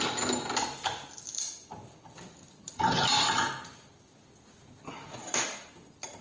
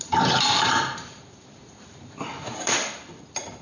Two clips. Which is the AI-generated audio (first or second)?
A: second